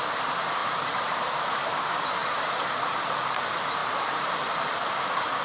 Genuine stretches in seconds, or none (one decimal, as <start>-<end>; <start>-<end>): 0.0-0.6; 1.4-2.2; 2.7-3.8; 4.3-5.4